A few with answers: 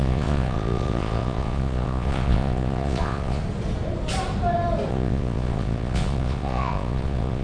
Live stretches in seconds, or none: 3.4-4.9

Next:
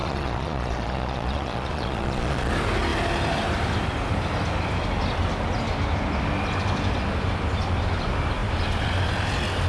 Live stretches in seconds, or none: 2.5-9.7